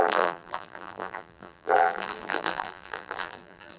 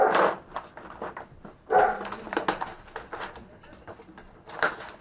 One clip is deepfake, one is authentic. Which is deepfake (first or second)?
first